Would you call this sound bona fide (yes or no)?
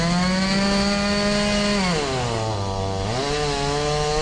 yes